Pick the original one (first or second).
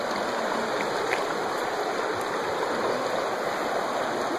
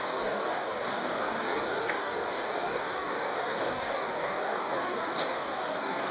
first